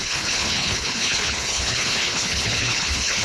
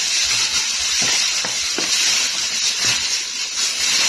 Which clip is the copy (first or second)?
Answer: first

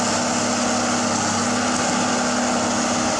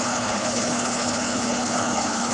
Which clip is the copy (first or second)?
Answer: second